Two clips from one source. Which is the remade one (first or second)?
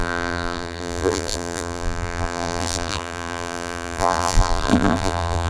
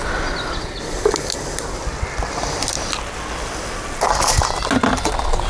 first